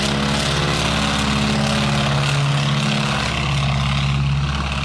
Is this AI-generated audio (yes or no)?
no